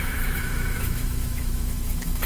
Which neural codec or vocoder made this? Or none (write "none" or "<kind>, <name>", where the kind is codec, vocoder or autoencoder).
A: autoencoder, DAC-VAE